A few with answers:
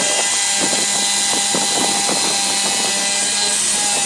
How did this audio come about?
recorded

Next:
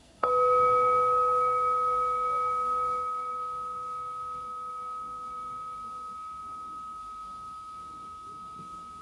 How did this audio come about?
remade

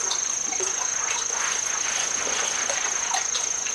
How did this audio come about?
remade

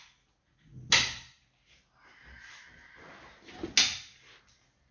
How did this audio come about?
recorded